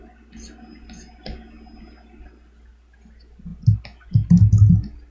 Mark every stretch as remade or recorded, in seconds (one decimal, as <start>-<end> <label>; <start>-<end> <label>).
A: 0.0-5.1 recorded